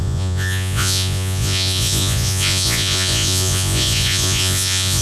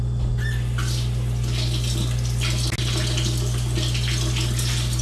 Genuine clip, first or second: second